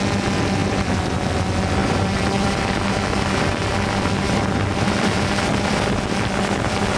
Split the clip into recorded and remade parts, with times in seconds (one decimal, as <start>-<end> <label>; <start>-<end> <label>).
0.0-0.6 recorded; 0.6-1.4 remade; 1.4-1.8 recorded; 1.8-5.9 remade; 5.9-7.0 recorded